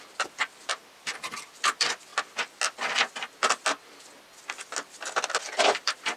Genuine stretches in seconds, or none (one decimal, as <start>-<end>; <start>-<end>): 2.1-5.8